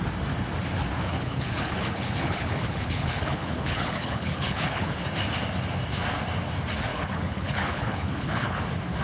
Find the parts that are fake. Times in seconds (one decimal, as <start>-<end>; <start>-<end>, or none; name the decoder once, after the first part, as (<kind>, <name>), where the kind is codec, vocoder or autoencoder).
1.1-5.0 (codec, HILCodec); 6.9-8.6